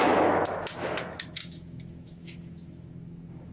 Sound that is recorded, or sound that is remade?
remade